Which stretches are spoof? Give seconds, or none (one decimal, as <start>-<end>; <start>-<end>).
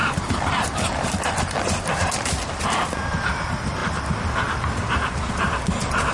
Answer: none